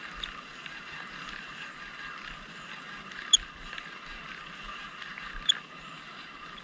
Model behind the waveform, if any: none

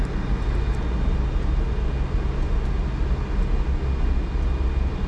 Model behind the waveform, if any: none